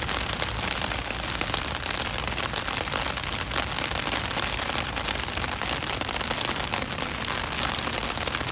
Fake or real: real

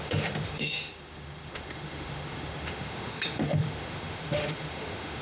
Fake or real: fake